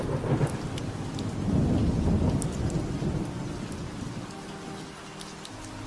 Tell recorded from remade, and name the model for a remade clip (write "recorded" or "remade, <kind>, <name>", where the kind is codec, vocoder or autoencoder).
recorded